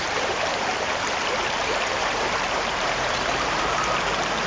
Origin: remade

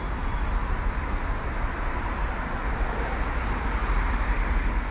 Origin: remade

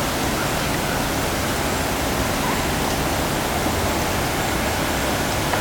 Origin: recorded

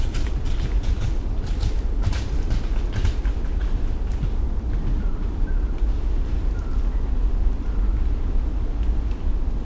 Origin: recorded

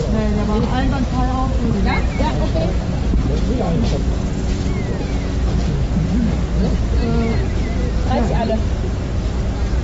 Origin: recorded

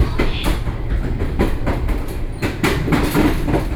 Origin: remade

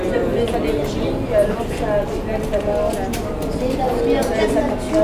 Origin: recorded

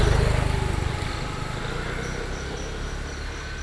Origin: recorded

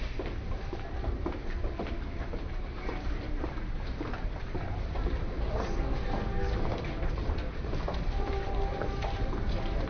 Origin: remade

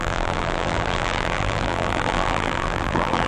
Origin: remade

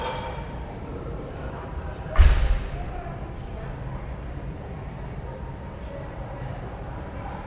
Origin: remade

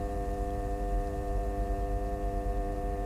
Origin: remade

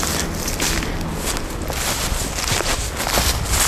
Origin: recorded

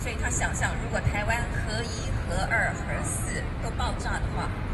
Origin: recorded